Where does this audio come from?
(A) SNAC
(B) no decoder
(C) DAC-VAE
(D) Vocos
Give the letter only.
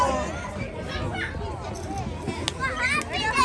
B